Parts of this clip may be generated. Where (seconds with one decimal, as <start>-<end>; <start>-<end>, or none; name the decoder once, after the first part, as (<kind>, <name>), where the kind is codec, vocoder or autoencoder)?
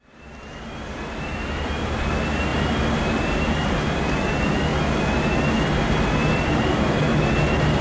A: none